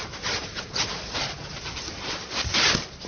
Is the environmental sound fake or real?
real